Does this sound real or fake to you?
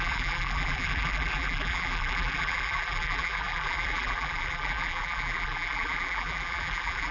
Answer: fake